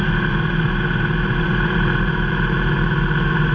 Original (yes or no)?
no